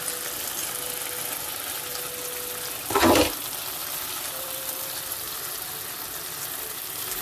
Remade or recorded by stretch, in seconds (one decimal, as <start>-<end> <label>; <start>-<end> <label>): 0.0-3.8 recorded; 3.8-5.1 remade; 5.1-7.2 recorded